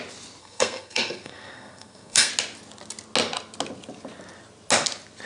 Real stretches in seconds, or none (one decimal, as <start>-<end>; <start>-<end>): 0.0-0.4; 2.3-5.3